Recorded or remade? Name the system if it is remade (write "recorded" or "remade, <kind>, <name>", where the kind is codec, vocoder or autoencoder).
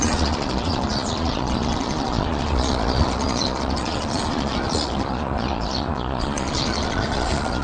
remade, vocoder, Vocos